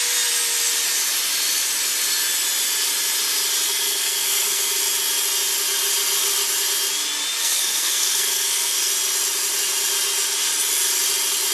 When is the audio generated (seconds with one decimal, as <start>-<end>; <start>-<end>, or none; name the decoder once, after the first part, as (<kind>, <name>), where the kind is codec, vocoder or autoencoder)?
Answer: 3.7-4.8 (codec, SNAC); 7.4-8.9